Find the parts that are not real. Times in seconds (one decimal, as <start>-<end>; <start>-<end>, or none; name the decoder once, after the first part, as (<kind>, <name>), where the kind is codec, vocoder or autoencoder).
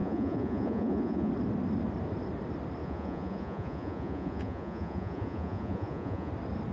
0.0-1.3 (vocoder, Vocos); 2.8-6.3